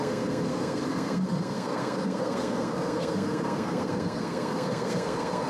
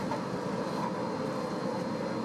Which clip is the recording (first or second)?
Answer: second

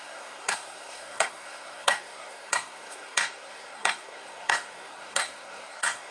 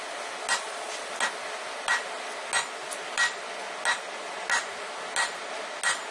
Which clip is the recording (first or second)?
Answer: second